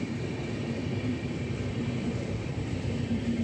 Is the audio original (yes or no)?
no